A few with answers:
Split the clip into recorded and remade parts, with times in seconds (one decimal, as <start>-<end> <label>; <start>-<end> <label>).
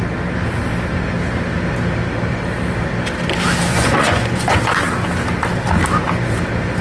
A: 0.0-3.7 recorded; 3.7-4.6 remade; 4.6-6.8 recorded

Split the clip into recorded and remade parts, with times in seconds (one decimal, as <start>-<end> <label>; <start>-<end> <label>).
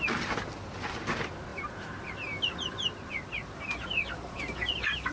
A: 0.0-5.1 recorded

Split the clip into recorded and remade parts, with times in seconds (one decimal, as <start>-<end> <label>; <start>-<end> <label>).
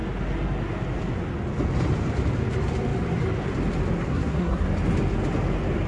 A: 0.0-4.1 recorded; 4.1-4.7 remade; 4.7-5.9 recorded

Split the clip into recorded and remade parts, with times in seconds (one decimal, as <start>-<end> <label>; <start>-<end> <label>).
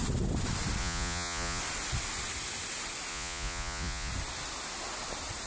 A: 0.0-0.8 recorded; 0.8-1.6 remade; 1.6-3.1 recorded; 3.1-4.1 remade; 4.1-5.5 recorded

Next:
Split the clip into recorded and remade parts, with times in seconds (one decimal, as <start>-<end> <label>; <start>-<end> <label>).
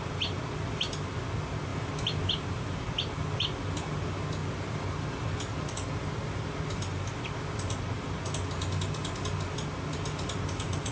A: 0.0-10.9 recorded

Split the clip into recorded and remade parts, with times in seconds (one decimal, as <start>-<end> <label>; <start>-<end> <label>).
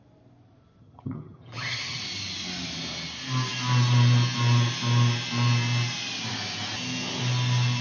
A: 0.0-0.8 recorded; 0.8-2.0 remade; 2.0-7.8 recorded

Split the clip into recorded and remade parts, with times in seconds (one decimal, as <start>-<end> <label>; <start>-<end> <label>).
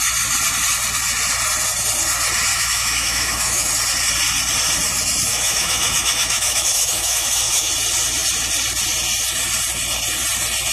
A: 0.0-2.5 recorded; 2.5-3.7 remade; 3.7-5.3 recorded; 5.3-7.7 remade; 7.7-10.7 recorded